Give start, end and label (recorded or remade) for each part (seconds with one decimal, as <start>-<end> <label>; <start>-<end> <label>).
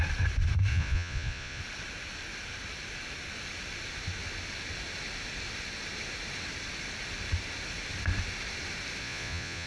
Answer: 0.0-0.7 recorded; 0.7-1.6 remade; 1.6-9.0 recorded; 9.0-9.7 remade